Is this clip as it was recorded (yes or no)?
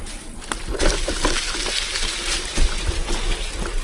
no